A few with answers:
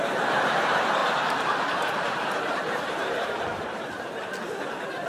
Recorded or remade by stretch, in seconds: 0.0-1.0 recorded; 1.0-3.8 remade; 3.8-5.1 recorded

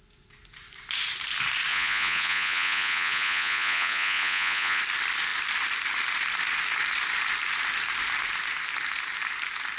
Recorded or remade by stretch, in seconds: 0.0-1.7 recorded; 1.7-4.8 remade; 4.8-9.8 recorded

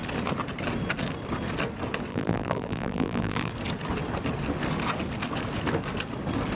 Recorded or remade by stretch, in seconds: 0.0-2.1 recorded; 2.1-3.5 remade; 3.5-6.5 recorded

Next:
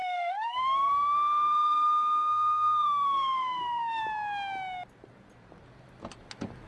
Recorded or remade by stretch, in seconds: 0.0-4.0 remade; 4.0-6.7 recorded